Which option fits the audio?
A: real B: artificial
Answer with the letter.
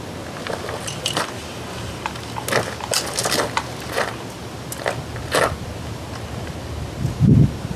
A